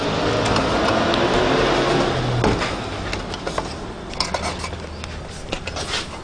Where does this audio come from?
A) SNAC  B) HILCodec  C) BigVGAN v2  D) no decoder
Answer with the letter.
D